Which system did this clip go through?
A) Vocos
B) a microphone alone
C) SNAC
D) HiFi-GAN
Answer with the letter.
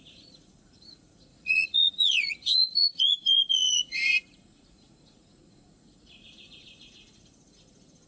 A